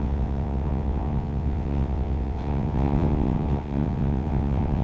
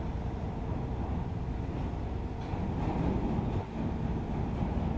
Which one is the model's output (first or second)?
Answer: first